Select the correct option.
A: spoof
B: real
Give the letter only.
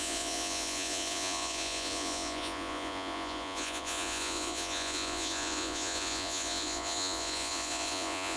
A